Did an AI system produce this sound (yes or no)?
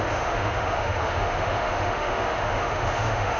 yes